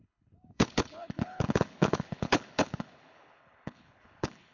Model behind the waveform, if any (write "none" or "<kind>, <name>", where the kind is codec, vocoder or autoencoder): codec, HILCodec